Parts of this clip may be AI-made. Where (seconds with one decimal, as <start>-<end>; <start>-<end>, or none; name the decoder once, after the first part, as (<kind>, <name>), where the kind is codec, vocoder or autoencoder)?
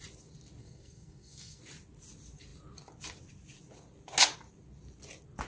0.6-1.6 (codec, SNAC)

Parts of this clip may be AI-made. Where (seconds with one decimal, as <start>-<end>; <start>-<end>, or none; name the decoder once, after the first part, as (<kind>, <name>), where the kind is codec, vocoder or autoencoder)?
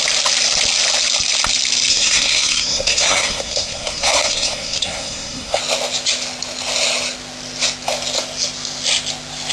1.9-5.6 (codec, SNAC)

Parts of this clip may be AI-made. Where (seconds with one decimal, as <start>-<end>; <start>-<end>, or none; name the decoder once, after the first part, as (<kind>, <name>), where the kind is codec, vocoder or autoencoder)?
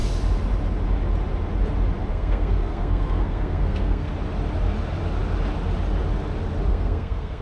2.1-4.1 (codec, SNAC); 6.7-7.4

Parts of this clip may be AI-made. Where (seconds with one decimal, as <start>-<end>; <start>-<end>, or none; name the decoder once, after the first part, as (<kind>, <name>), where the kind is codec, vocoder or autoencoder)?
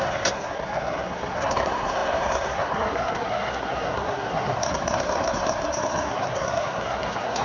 0.0-7.4 (codec, SNAC)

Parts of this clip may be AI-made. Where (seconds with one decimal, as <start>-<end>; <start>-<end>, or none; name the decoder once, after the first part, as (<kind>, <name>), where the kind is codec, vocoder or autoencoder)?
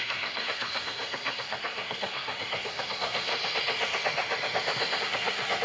0.0-3.3 (codec, SNAC); 5.0-5.6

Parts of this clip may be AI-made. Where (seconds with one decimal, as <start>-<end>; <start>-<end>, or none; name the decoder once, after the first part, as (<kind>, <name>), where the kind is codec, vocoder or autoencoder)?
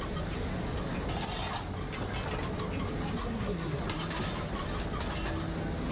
3.2-3.8 (codec, SNAC)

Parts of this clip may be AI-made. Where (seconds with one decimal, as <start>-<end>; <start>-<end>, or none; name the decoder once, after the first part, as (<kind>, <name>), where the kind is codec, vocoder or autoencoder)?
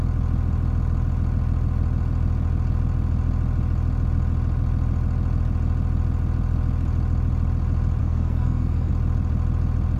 8.0-8.9 (codec, SNAC)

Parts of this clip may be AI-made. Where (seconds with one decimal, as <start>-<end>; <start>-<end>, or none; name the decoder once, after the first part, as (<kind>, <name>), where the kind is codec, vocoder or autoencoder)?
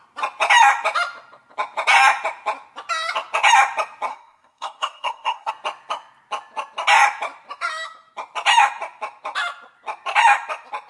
4.1-5.5 (codec, SNAC)